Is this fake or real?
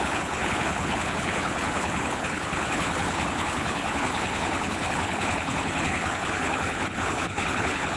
fake